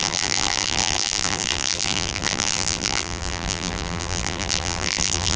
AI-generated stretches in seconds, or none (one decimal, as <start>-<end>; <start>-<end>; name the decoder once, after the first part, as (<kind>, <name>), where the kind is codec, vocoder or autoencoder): 0.0-5.4 (vocoder, BigVGAN v2)